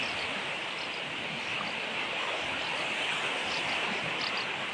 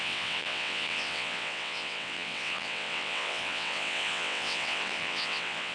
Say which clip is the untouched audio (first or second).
first